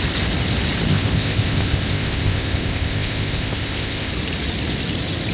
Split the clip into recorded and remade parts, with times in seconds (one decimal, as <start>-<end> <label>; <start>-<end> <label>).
0.0-0.9 recorded; 0.9-4.1 remade; 4.1-5.3 recorded